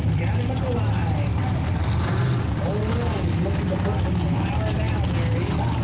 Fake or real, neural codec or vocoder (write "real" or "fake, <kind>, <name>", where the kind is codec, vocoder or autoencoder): real